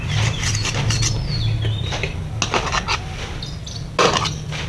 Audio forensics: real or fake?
real